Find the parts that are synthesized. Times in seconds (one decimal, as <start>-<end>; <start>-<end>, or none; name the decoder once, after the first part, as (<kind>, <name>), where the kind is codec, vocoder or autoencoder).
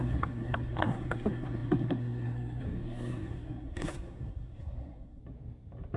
0.0-5.2 (codec, SNAC)